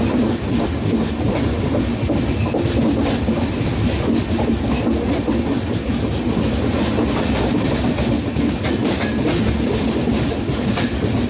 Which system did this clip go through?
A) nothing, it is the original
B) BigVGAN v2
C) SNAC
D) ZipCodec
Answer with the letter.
A